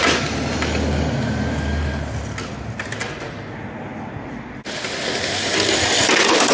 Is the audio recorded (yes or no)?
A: yes